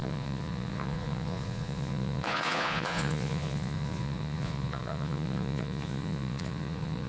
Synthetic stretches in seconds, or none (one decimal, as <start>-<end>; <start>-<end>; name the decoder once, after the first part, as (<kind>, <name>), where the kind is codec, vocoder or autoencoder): 0.0-7.1 (vocoder, Vocos)